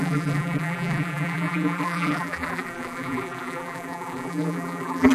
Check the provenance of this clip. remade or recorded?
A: remade